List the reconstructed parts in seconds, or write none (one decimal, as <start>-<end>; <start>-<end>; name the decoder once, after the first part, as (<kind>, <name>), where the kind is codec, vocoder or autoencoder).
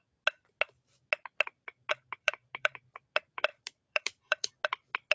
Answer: 1.9-2.8 (vocoder, BigVGAN v2); 3.5-4.5